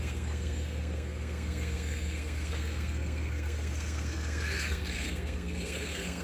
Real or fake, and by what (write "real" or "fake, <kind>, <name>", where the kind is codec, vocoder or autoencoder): fake, codec, SNAC